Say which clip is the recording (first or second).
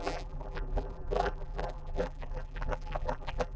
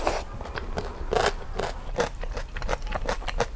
second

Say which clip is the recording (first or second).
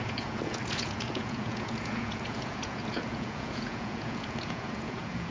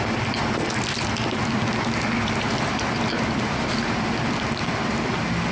second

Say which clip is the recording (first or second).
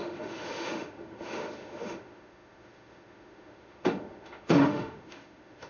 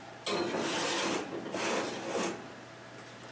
second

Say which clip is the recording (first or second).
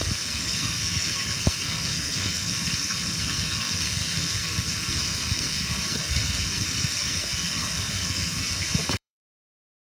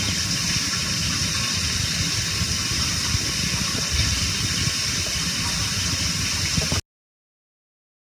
second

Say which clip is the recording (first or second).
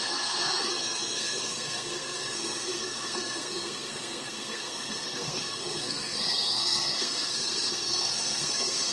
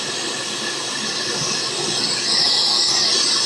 second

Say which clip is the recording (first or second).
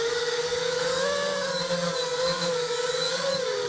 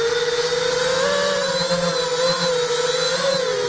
second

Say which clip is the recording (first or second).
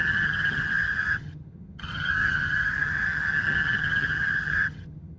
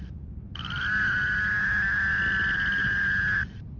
second